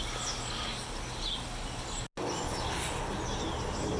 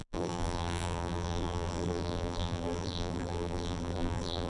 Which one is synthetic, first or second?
second